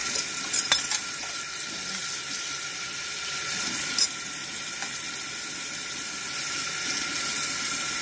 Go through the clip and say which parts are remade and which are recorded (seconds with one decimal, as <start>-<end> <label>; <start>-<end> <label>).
0.0-8.0 recorded